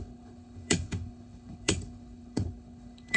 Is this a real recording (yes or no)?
no